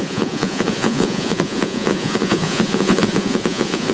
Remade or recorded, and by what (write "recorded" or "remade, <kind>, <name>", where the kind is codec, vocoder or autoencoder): remade, vocoder, Vocos